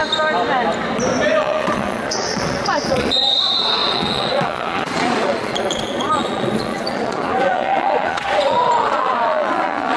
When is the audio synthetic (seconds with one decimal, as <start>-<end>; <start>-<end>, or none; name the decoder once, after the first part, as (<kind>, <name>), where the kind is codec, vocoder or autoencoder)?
1.4-10.0 (vocoder, Vocos)